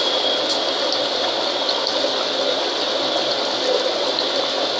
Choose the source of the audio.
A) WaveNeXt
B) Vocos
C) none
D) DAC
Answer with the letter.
C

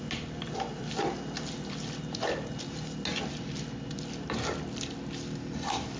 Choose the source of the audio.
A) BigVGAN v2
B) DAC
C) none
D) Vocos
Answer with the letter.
C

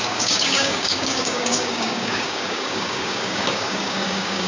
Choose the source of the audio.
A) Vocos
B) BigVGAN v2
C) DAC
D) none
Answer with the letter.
C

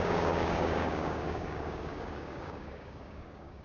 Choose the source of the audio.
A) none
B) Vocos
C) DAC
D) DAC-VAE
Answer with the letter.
C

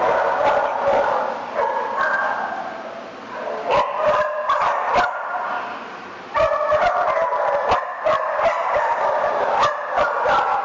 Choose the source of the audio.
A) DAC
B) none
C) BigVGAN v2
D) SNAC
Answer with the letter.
B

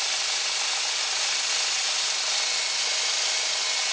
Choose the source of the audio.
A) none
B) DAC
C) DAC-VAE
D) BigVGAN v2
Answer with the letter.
A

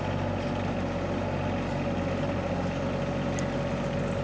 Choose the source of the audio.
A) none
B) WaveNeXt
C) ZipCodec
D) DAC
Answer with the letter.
A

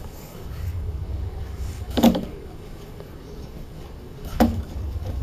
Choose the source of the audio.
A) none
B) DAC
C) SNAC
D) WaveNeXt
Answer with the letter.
B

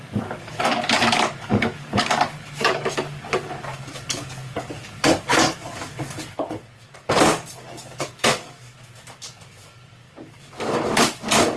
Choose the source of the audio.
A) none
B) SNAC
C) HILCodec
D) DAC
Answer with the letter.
D